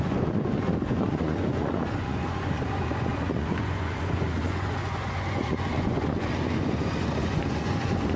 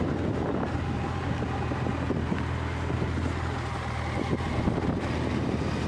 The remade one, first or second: first